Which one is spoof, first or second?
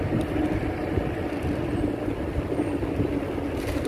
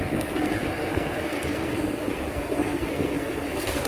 second